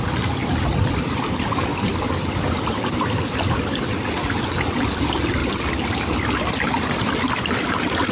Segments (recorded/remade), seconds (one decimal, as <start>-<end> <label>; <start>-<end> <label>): 0.0-1.7 recorded; 1.7-4.4 remade; 4.4-8.1 recorded